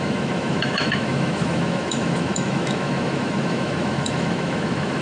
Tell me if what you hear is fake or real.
fake